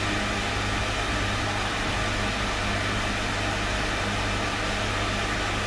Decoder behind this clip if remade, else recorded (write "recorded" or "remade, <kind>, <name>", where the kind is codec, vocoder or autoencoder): recorded